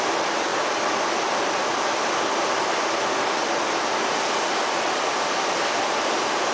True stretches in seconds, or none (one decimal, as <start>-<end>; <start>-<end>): 0.0-6.5